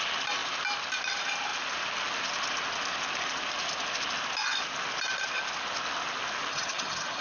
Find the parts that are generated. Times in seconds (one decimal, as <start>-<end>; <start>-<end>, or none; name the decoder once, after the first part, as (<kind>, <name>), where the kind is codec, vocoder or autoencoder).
6.5-7.2 (vocoder, HiFi-GAN)